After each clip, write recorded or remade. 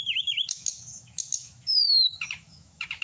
remade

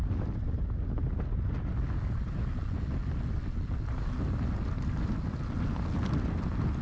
recorded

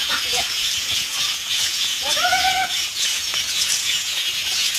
remade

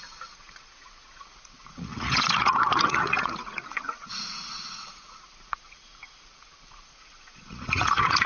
remade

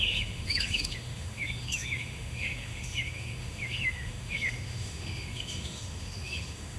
remade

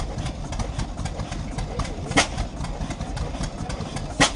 recorded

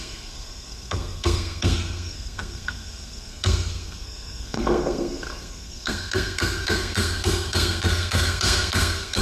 remade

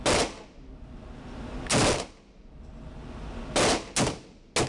recorded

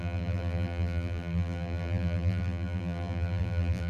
remade